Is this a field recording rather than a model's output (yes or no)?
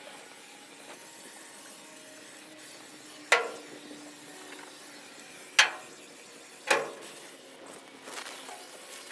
yes